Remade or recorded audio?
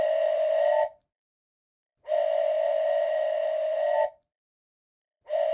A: remade